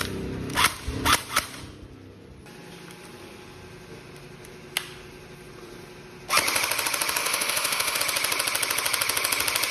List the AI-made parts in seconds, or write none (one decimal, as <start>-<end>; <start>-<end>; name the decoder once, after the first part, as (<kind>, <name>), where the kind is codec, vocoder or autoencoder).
7.2-8.0 (autoencoder, DAC-VAE)